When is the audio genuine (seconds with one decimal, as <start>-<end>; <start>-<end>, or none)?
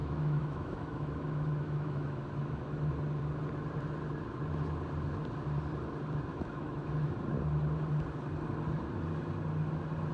2.9-6.3; 6.9-10.1